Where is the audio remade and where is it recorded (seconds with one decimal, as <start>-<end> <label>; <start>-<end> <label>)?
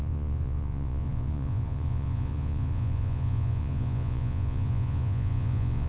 0.0-5.9 remade